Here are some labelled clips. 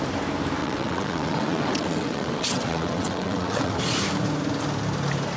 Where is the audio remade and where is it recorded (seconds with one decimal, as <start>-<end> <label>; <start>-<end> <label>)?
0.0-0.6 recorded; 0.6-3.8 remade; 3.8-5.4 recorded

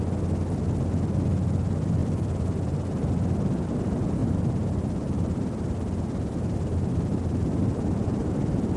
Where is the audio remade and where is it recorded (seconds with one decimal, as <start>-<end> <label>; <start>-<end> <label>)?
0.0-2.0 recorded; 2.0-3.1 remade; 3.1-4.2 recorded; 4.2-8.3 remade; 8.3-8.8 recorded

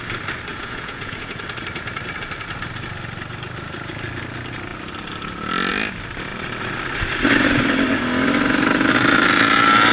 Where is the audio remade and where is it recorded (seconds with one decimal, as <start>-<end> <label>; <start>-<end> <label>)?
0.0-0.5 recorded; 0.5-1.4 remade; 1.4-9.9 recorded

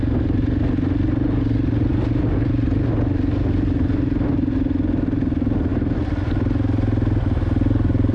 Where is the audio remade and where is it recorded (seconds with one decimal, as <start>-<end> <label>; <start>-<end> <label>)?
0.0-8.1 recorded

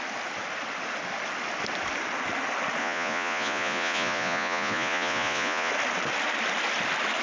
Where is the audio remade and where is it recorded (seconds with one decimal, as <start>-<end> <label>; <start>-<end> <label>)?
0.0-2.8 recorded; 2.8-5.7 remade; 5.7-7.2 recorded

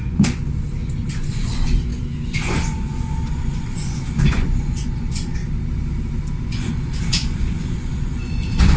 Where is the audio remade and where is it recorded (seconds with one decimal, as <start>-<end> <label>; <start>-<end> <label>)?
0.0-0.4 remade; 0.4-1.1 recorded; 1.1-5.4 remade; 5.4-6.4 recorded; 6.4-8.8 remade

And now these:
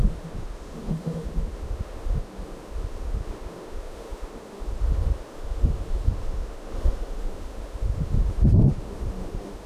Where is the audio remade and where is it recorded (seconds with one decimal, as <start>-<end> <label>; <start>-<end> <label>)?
0.0-9.7 remade

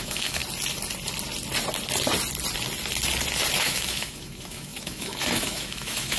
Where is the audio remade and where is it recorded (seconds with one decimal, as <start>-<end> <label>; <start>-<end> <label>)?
0.0-0.4 remade; 0.4-3.6 recorded; 3.6-6.2 remade